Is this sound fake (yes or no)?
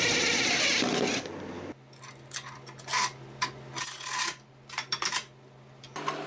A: no